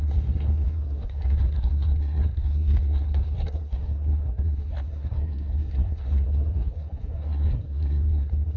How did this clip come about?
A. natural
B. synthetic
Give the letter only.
B